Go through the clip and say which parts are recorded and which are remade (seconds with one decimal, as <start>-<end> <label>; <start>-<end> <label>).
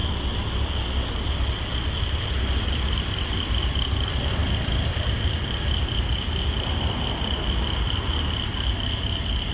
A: 0.0-0.6 recorded; 0.6-9.5 remade